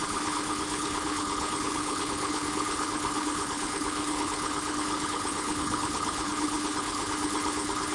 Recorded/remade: remade